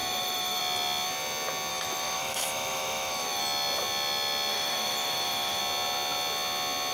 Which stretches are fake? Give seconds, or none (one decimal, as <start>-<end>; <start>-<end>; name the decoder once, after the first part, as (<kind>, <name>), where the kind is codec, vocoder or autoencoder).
0.0-0.6 (autoencoder, DAC-VAE); 1.7-3.4; 4.5-5.6